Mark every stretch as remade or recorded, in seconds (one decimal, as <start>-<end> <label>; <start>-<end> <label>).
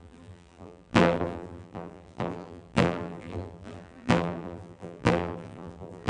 0.0-6.1 remade